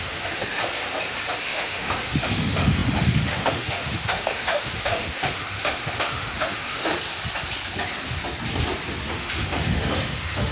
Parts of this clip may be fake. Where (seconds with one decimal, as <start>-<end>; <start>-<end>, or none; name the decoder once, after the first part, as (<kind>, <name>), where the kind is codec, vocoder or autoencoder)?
0.0-0.6 (autoencoder, DAC-VAE); 1.4-6.9; 9.1-10.5